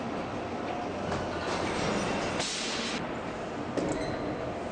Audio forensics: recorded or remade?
recorded